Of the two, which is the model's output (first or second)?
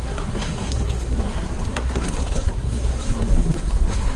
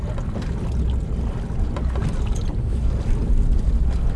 first